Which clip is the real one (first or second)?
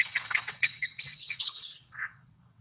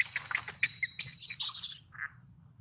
second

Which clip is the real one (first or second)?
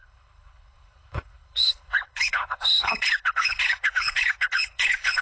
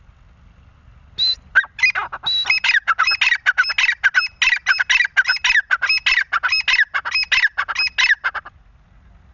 second